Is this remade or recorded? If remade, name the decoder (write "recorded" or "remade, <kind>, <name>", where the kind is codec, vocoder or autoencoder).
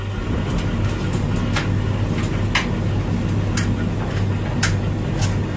recorded